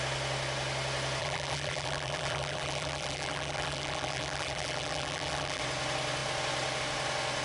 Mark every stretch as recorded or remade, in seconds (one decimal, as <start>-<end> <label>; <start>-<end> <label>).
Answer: 0.0-1.2 recorded; 1.2-5.6 remade; 5.6-7.4 recorded